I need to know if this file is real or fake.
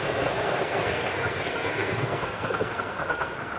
fake